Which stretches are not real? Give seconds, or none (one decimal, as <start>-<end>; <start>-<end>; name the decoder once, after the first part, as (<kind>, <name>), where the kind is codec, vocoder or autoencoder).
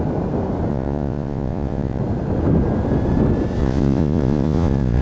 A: 0.7-2.0 (vocoder, Vocos); 3.6-5.0